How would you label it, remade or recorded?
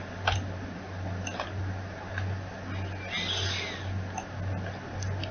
recorded